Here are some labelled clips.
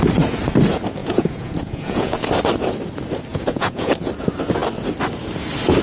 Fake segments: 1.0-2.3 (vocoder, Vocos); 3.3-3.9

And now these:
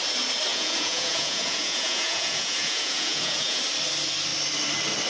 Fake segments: 0.5-3.6 (vocoder, Vocos)